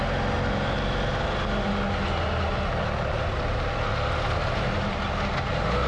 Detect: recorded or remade recorded